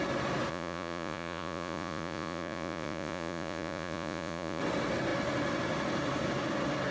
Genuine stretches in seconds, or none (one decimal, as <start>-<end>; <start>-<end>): 0.0-0.5; 4.6-6.9